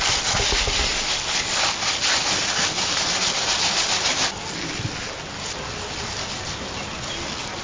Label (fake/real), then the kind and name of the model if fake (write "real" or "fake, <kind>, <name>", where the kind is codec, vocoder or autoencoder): real